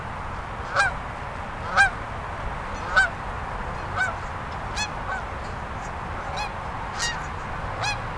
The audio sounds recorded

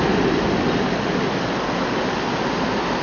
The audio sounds recorded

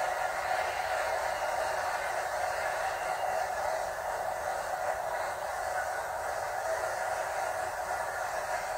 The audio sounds recorded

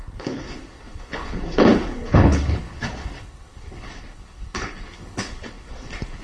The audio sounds remade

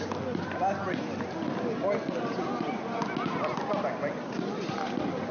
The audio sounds recorded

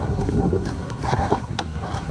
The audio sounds remade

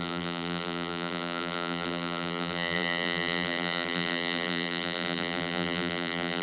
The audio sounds remade